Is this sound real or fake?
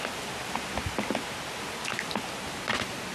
real